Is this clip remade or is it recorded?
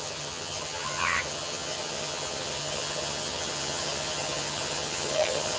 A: remade